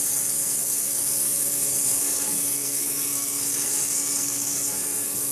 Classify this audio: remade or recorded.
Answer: remade